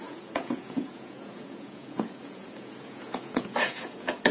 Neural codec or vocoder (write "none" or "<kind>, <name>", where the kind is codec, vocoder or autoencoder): vocoder, Vocos